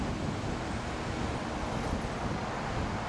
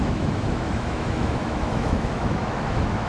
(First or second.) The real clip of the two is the first